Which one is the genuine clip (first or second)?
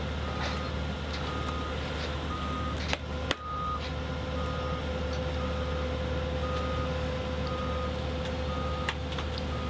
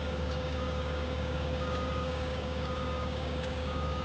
first